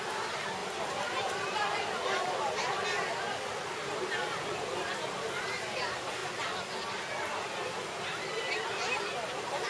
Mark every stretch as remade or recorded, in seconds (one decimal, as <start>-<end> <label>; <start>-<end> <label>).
0.0-0.6 recorded; 0.6-5.3 remade; 5.3-9.7 recorded